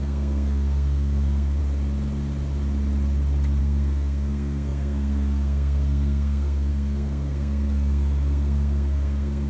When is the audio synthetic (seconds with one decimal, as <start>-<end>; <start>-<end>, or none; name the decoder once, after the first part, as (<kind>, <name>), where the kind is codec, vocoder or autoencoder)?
0.0-1.6 (codec, SNAC); 3.6-9.5